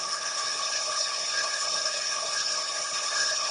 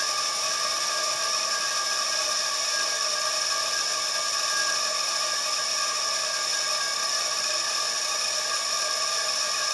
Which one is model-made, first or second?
first